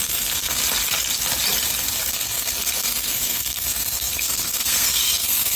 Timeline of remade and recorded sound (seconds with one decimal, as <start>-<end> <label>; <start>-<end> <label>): 0.0-0.6 remade; 0.6-2.1 recorded; 2.1-5.6 remade